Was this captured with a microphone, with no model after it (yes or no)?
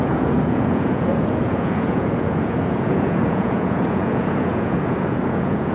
no